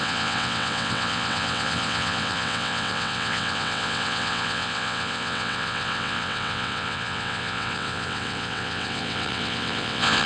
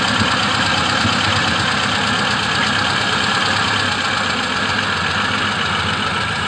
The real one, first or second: second